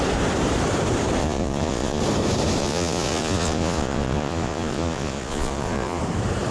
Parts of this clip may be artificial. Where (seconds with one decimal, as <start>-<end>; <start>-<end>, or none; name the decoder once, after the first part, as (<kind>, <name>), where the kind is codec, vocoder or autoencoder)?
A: 1.2-2.0 (vocoder, Vocos); 2.6-6.0